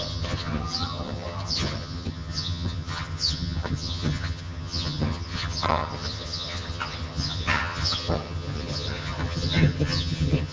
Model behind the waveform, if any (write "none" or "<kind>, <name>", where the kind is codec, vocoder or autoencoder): vocoder, HiFi-GAN